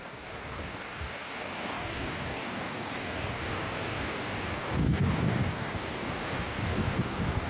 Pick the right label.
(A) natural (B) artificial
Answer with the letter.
B